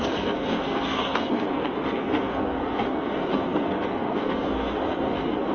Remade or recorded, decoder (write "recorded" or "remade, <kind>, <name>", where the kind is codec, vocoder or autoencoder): remade, codec, SNAC